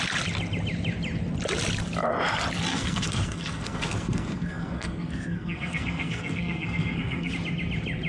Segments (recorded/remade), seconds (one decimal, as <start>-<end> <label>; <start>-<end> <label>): 0.0-2.7 recorded; 2.7-7.3 remade; 7.3-8.1 recorded